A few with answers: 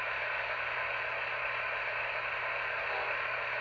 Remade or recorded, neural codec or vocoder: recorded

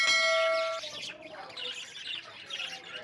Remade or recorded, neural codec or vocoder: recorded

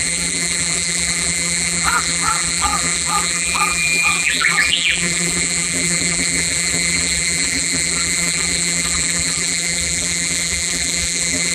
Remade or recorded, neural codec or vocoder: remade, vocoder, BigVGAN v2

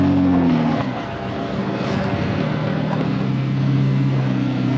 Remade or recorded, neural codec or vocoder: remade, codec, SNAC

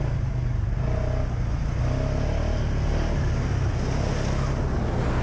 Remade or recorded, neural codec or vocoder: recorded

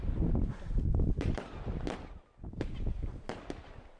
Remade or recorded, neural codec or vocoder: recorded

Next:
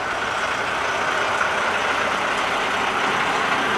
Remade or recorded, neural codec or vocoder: recorded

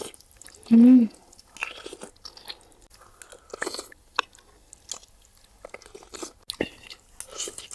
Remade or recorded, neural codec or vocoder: recorded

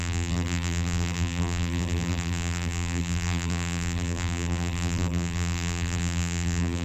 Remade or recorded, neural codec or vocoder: remade, vocoder, BigVGAN v2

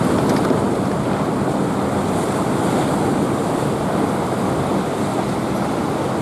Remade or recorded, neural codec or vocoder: recorded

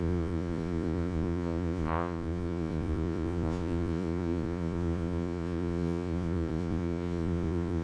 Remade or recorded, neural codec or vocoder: remade, vocoder, Vocos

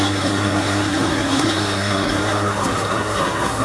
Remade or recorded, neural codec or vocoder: remade, codec, SNAC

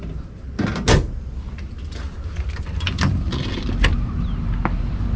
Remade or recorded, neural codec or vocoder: recorded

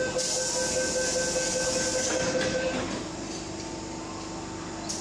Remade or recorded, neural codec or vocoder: recorded